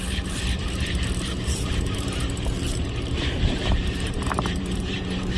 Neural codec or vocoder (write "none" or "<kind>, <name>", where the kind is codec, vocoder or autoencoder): vocoder, BigVGAN v2